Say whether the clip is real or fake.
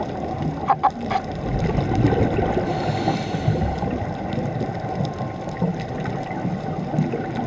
real